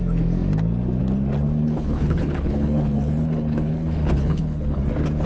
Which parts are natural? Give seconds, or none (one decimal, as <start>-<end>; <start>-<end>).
0.0-1.6; 4.8-5.3